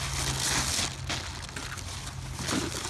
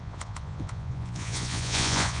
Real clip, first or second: first